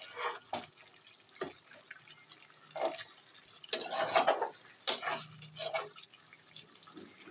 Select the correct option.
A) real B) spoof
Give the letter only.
A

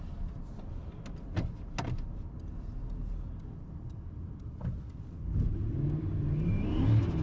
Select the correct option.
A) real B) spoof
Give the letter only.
A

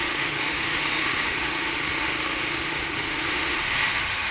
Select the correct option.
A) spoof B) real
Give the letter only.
A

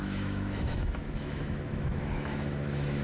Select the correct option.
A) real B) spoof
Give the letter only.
B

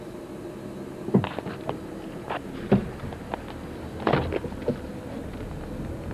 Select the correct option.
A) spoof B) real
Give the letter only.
B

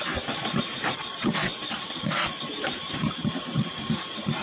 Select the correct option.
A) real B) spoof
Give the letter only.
A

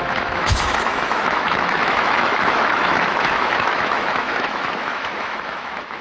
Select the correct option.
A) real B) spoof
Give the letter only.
B